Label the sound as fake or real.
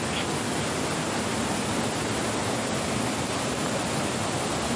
real